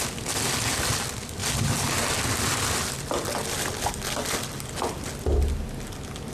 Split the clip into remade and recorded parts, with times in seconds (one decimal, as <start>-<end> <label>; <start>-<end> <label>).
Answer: 0.0-6.3 recorded